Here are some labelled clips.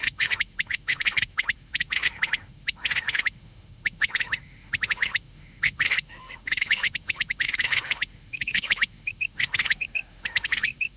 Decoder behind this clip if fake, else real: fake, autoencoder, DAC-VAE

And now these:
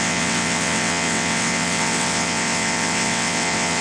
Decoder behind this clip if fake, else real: fake, vocoder, WaveNeXt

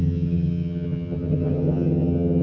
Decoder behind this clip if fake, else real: fake, vocoder, HiFi-GAN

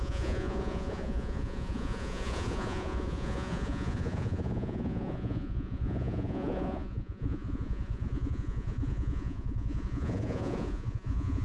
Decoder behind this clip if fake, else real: fake, vocoder, Vocos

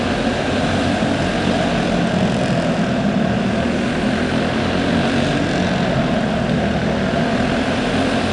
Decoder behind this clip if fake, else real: real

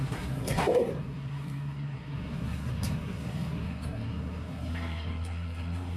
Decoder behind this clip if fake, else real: fake, codec, SNAC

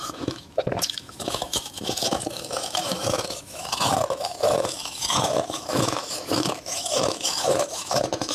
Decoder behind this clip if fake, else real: fake, autoencoder, DAC-VAE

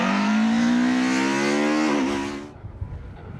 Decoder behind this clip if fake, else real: real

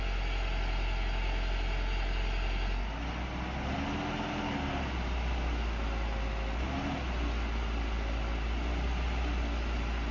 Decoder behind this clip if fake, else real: real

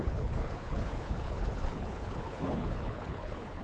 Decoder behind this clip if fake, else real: fake, codec, HILCodec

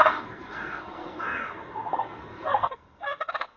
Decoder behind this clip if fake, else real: fake, codec, SNAC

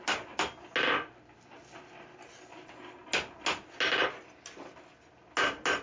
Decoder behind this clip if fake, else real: real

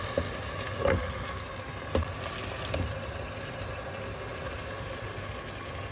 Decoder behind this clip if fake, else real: real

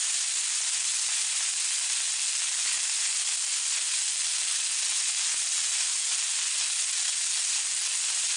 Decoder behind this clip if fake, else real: real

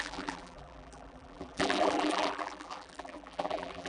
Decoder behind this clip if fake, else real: fake, vocoder, BigVGAN v2